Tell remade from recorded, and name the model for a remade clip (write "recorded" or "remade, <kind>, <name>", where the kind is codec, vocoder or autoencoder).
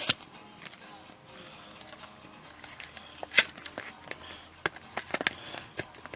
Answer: recorded